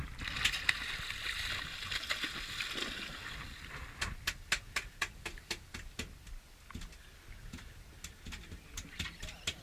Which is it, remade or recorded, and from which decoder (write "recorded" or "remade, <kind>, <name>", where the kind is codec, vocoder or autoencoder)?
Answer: recorded